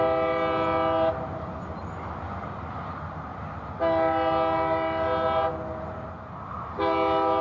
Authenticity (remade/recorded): recorded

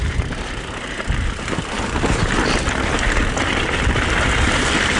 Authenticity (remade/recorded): recorded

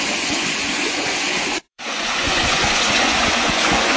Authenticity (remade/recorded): remade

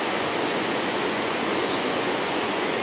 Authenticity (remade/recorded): remade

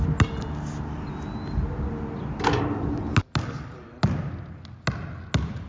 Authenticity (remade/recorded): recorded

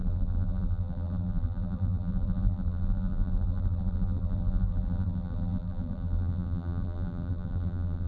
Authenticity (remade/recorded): remade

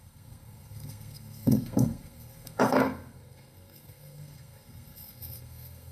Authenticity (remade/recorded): remade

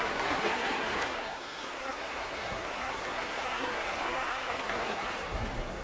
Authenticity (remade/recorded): remade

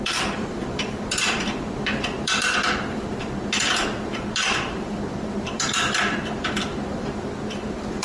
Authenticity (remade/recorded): remade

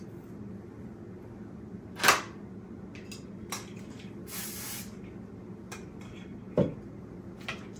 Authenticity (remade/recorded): recorded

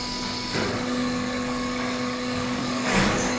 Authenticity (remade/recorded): remade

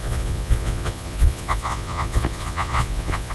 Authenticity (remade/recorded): remade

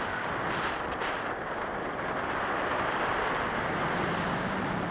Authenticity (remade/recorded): recorded